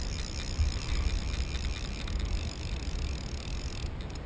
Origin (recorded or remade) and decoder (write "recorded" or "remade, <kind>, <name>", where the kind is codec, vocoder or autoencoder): recorded